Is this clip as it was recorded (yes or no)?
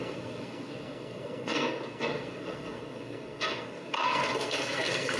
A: no